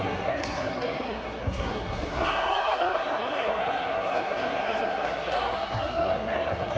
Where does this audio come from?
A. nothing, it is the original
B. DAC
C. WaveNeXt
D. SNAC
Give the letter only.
D